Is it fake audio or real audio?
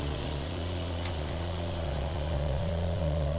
fake